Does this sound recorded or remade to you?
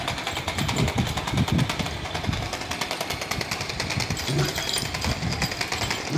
recorded